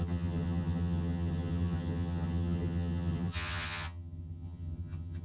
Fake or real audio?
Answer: fake